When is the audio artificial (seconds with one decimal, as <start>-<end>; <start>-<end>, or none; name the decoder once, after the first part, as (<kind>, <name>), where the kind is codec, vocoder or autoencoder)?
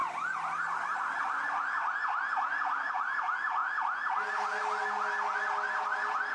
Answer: none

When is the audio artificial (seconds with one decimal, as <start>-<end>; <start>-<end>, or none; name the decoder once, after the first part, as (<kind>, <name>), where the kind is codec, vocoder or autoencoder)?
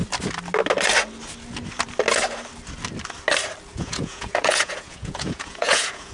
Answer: 3.7-6.1 (vocoder, Vocos)